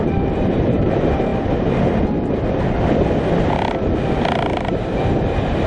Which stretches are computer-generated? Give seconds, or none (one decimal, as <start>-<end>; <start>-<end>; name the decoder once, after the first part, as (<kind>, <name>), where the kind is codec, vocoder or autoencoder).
0.0-1.3 (vocoder, BigVGAN v2); 4.7-5.7